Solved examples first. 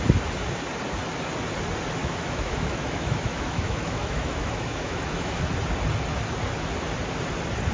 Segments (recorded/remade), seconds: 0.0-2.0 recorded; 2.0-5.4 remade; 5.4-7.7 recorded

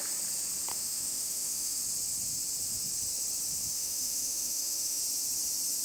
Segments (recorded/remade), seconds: 0.0-0.7 recorded; 0.7-1.8 remade; 1.8-3.8 recorded; 3.8-5.0 remade; 5.0-5.8 recorded

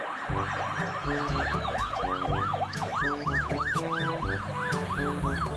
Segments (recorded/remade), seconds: 0.0-1.0 recorded; 1.0-4.1 remade; 4.1-5.6 recorded